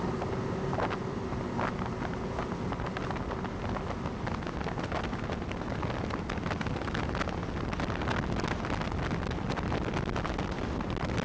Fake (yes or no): no